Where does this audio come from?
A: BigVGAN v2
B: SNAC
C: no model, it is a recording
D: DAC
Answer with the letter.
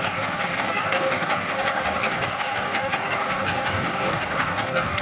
D